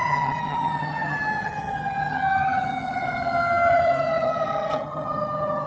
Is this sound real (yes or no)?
no